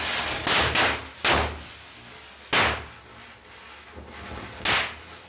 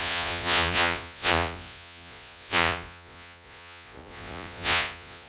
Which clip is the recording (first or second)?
first